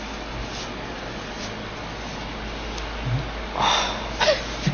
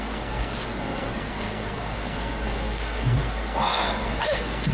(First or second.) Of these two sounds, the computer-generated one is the second